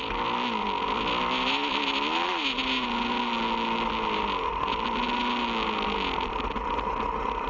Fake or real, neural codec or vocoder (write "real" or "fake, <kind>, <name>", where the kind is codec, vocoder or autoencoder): real